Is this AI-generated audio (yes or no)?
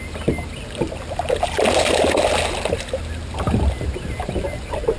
no